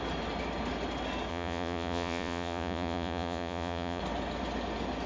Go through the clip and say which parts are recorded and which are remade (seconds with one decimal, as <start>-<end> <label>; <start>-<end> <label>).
0.0-1.3 recorded; 1.3-4.0 remade; 4.0-5.1 recorded